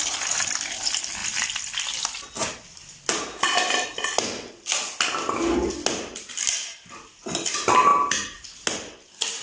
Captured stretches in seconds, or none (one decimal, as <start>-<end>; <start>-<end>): 0.0-9.4